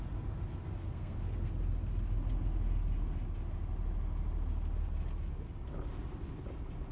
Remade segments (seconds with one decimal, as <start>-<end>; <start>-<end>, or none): 0.8-1.5